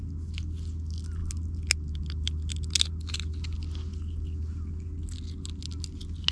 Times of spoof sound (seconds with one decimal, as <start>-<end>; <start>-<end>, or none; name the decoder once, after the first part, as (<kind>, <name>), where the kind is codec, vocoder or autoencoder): none